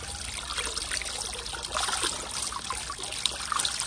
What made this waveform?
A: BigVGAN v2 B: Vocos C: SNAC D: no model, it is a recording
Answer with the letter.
D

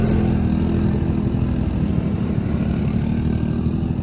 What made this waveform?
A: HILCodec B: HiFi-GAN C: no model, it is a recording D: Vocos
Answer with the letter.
C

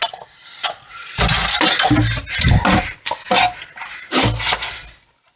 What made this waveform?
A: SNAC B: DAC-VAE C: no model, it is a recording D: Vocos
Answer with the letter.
C